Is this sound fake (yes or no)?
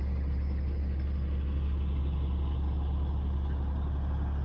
no